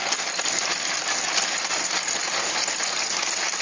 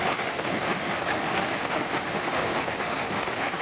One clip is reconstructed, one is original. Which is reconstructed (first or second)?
second